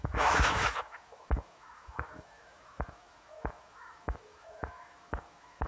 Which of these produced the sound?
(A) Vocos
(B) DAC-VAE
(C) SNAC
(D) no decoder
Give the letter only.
B